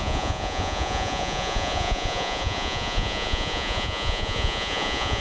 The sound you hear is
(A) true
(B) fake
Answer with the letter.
B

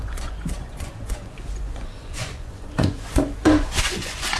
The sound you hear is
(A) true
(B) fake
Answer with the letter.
B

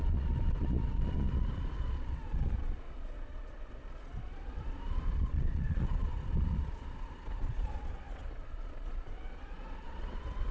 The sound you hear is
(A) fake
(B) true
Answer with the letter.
A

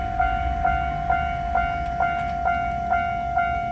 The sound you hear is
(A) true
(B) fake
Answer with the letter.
A